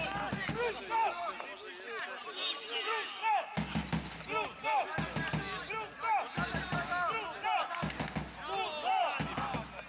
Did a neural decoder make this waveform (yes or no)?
no